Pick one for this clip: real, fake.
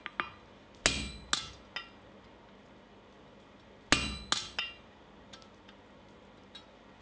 real